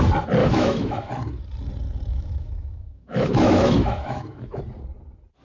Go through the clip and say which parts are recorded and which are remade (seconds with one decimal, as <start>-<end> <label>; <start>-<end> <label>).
0.0-0.4 recorded; 0.4-1.1 remade; 1.1-2.1 recorded; 2.1-4.6 remade; 4.6-5.4 recorded